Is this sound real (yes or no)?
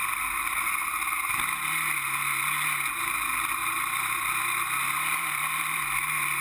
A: yes